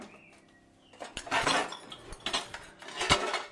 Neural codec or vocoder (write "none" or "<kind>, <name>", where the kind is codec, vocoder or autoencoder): none